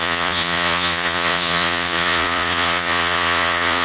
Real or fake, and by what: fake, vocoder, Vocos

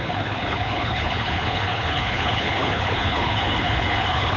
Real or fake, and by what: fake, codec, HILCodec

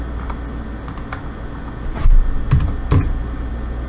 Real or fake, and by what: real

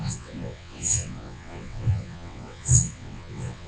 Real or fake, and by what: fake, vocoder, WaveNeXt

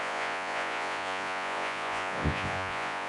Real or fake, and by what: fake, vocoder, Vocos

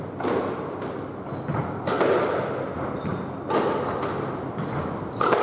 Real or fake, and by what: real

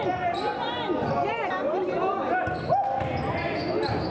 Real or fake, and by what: real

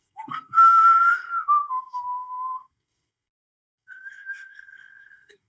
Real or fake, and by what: fake, codec, SNAC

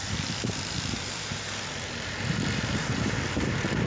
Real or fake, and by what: fake, vocoder, BigVGAN v2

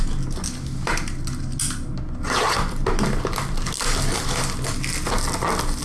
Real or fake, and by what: real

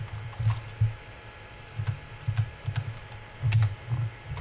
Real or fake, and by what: real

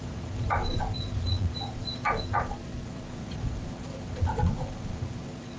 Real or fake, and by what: fake, vocoder, Vocos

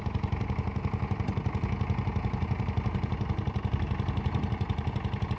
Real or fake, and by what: real